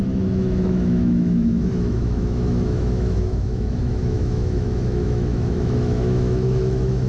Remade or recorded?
remade